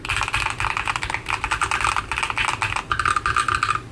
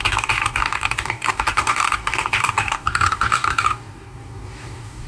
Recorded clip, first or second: first